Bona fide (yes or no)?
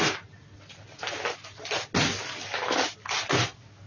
yes